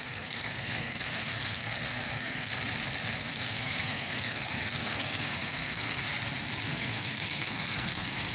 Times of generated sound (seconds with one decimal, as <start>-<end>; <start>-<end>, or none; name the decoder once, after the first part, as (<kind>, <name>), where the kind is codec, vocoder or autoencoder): 0.0-2.5 (codec, SNAC); 3.2-6.1; 6.6-8.3